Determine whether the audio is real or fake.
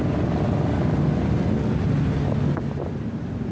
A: real